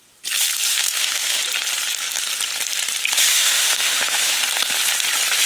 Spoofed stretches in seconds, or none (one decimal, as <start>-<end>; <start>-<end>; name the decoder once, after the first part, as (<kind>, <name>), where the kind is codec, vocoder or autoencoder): 0.7-1.4 (autoencoder, DAC-VAE); 3.3-4.4